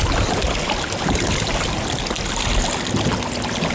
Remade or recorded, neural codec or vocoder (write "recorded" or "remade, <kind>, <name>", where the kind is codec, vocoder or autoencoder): recorded